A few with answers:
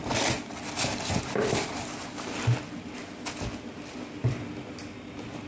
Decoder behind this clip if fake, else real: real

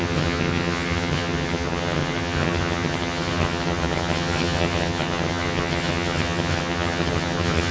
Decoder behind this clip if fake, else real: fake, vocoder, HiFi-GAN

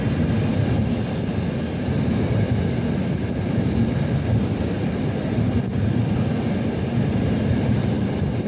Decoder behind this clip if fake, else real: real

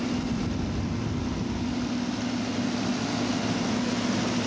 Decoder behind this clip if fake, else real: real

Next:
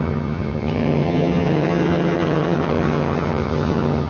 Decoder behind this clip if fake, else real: fake, vocoder, HiFi-GAN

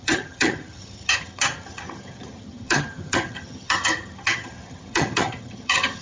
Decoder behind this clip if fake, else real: fake, vocoder, HiFi-GAN